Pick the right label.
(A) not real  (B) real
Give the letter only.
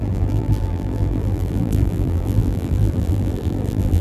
A